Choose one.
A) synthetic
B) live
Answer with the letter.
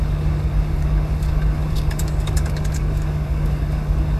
A